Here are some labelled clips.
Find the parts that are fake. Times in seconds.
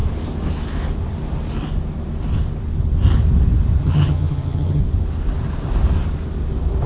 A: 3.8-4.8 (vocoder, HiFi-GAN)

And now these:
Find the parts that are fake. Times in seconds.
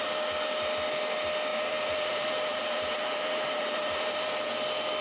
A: 1.5-4.5 (vocoder, BigVGAN v2)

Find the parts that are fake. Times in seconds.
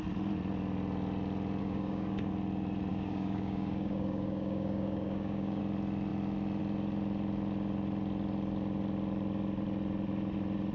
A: 1.6-2.3 (codec, DAC); 2.9-5.6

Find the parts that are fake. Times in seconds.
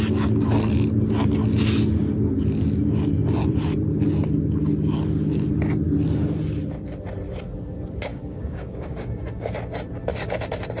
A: 8.1-9.5 (codec, DAC)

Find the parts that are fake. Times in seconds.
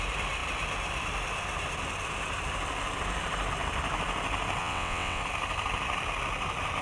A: 4.6-5.2 (vocoder, WaveNeXt)